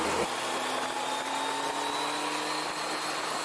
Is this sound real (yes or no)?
yes